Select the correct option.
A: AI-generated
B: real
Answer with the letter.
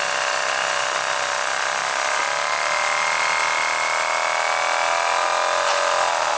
B